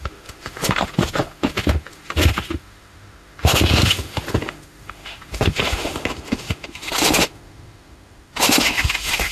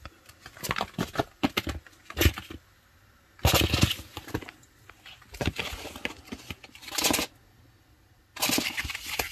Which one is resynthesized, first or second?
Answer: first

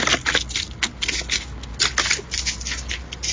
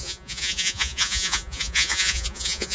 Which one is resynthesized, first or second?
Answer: second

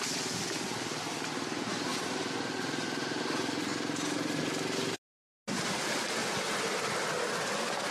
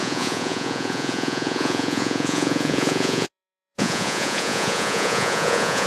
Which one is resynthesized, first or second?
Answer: second